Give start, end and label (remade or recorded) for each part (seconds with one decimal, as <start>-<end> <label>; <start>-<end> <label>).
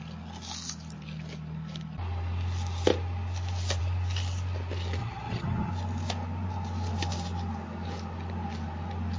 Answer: 0.0-5.0 recorded; 5.0-5.7 remade; 5.7-9.2 recorded